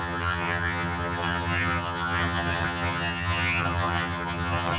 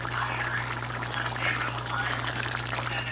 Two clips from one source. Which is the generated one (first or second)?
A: first